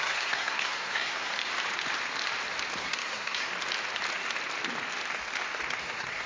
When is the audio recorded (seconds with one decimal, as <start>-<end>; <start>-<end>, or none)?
1.3-2.8; 3.5-5.8